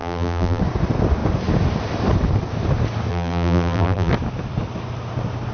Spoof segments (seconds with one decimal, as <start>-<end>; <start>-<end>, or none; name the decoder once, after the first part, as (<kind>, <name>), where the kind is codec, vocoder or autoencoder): 0.0-0.6 (vocoder, BigVGAN v2); 3.1-4.1